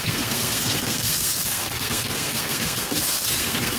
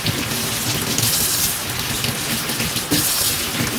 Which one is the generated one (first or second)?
first